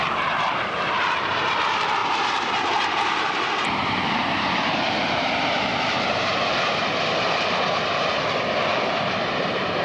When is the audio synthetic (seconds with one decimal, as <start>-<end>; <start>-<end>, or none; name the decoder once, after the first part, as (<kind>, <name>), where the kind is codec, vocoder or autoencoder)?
0.0-6.3 (vocoder, BigVGAN v2); 8.9-9.8